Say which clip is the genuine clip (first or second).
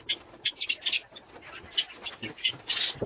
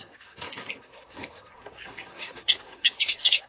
first